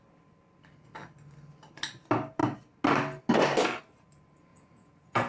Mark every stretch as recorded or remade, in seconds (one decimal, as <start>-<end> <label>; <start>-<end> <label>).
0.0-4.5 recorded; 4.5-5.3 remade